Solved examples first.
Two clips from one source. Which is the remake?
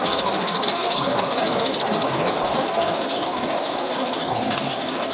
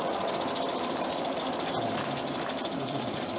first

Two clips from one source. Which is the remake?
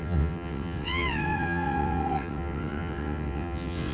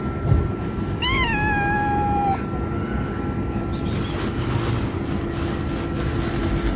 first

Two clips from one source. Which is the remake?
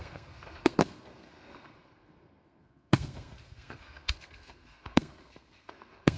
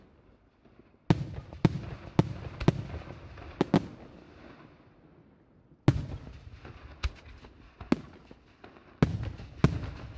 first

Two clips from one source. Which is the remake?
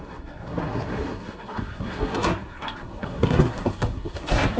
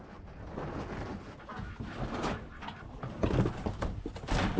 first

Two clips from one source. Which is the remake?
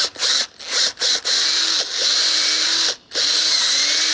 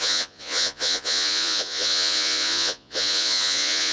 second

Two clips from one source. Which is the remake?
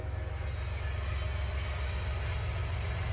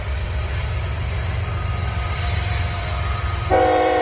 second